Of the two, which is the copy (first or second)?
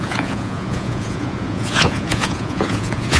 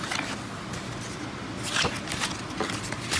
first